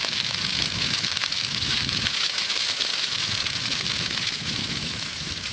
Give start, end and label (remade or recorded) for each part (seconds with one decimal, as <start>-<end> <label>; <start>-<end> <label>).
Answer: 0.0-5.5 remade